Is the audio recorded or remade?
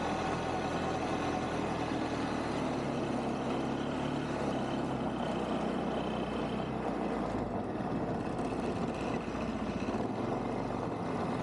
recorded